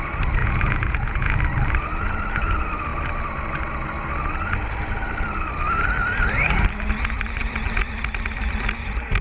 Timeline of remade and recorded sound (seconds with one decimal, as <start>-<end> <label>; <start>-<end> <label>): 0.0-0.4 recorded; 0.4-1.4 remade; 1.4-9.2 recorded